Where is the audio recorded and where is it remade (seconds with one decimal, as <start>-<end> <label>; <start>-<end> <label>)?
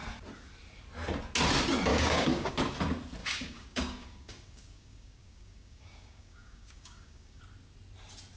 0.0-1.9 recorded; 1.9-2.5 remade; 2.5-3.2 recorded; 3.2-7.4 remade; 7.4-8.4 recorded